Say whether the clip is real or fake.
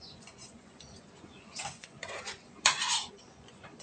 fake